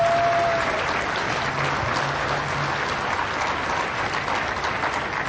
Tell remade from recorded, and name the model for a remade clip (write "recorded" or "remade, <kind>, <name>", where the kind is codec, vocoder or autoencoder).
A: recorded